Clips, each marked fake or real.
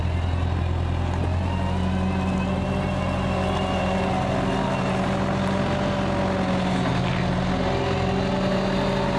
real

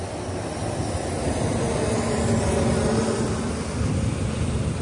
real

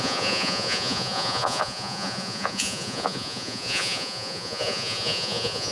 fake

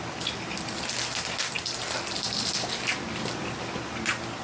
real